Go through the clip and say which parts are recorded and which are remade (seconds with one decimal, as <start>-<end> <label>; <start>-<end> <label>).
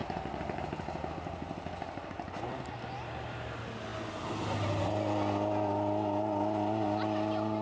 0.0-7.6 recorded